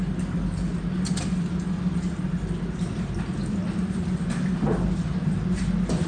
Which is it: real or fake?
real